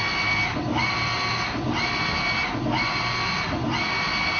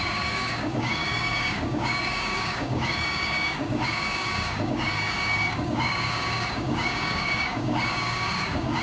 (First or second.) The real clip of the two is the first